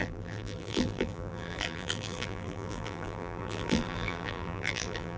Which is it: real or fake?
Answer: fake